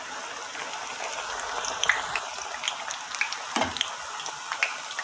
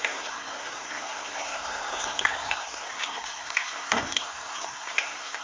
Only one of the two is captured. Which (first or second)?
first